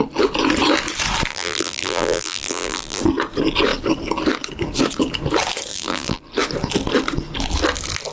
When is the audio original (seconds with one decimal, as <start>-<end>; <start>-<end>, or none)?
0.0-1.3; 3.0-5.7; 6.2-8.1